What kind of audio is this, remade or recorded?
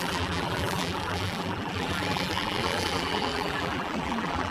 remade